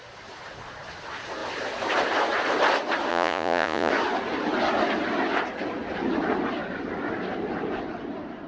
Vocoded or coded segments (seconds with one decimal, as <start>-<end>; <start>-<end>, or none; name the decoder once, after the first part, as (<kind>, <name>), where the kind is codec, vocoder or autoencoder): 3.1-3.9 (vocoder, Vocos)

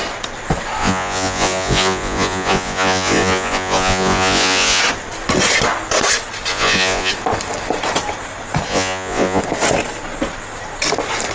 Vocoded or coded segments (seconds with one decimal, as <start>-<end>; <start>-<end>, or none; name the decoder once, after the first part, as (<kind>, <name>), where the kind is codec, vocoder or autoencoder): 0.8-4.8 (vocoder, Vocos); 6.5-7.1; 8.7-9.4